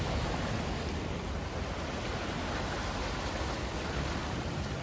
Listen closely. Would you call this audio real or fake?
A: real